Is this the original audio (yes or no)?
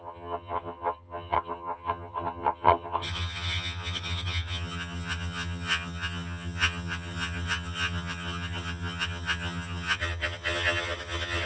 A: no